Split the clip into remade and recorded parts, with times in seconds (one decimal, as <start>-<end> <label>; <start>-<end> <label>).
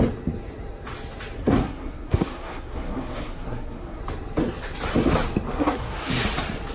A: 0.0-1.4 recorded; 1.4-4.0 remade; 4.0-5.5 recorded; 5.5-6.1 remade; 6.1-6.7 recorded